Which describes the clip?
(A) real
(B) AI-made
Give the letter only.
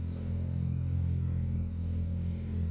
B